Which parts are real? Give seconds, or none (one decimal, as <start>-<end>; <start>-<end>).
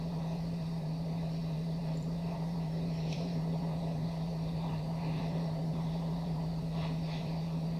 none